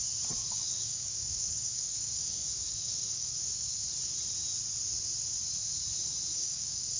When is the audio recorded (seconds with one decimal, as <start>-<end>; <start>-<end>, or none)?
0.0-0.4; 3.8-6.3